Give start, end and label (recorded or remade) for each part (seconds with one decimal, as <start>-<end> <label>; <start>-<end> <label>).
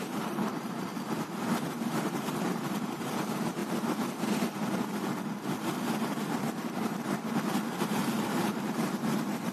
0.0-0.9 remade; 0.9-1.7 recorded; 1.7-3.6 remade; 3.6-7.8 recorded; 7.8-9.5 remade